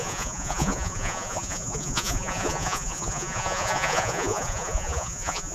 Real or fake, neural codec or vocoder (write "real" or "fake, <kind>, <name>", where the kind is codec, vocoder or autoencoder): fake, vocoder, Vocos